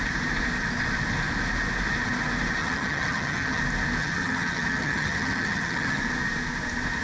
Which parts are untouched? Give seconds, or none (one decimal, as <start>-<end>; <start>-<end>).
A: 0.0-2.6; 3.6-4.0; 6.0-7.0